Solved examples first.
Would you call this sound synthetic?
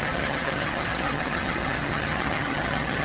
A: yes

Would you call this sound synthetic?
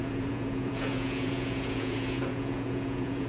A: yes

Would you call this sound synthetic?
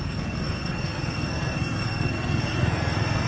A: yes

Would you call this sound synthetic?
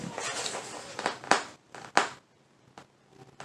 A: no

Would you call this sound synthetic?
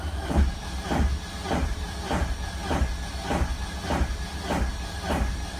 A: no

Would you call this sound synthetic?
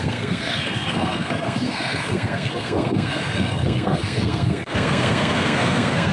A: yes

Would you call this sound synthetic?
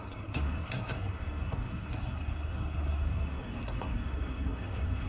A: yes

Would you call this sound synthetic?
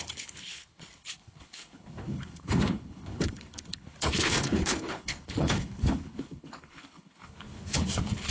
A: yes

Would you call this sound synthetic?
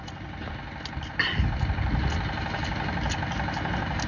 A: no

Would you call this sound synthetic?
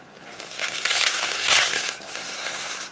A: yes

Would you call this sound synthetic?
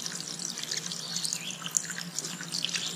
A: no